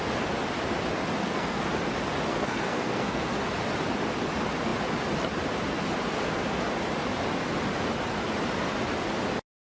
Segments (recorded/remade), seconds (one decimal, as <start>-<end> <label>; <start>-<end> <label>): 0.0-1.2 recorded; 1.2-1.7 remade; 1.7-2.3 recorded; 2.3-3.2 remade; 3.2-9.7 recorded